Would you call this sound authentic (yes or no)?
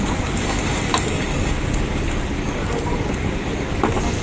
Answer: no